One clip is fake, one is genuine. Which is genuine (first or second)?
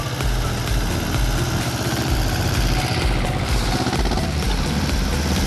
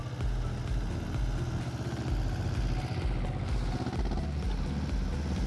second